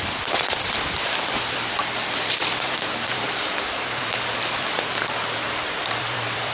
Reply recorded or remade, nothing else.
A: remade